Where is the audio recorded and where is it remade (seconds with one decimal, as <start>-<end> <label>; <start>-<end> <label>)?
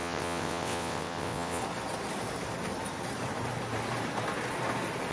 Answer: 0.0-1.6 remade; 1.6-5.1 recorded